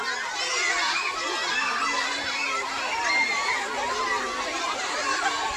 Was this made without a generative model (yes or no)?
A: yes